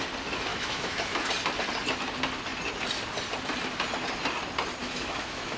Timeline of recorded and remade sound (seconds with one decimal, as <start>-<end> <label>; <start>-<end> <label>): 0.0-0.5 recorded; 0.5-1.3 remade; 1.3-4.8 recorded; 4.8-5.6 remade